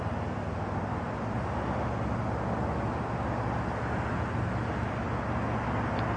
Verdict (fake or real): real